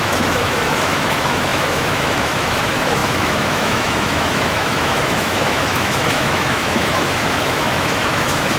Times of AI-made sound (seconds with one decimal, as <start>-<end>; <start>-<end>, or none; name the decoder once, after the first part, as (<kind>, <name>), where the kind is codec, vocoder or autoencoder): 0.0-8.6 (autoencoder, DAC-VAE)